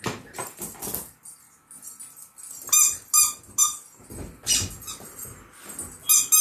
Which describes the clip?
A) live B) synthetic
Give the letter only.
A